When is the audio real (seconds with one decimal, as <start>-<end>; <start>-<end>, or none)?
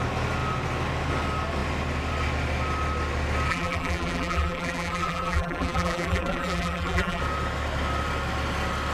0.0-3.5; 7.2-8.9